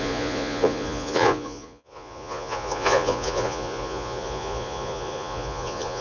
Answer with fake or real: fake